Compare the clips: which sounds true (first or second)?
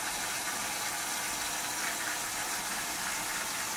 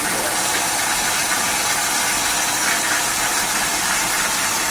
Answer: first